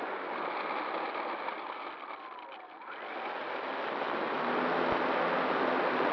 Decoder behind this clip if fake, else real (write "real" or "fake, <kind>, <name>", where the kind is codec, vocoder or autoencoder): real